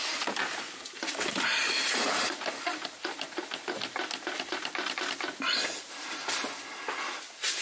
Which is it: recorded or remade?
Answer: recorded